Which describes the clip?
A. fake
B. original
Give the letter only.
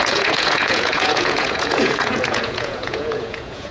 A